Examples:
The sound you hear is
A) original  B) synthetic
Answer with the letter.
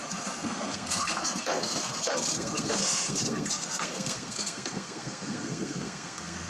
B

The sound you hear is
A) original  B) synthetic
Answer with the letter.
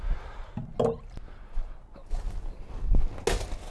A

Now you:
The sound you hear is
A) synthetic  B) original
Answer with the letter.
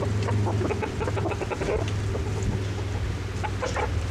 B